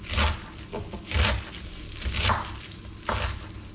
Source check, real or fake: real